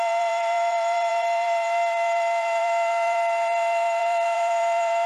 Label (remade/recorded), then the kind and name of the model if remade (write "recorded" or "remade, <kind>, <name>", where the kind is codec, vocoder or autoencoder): remade, vocoder, BigVGAN v2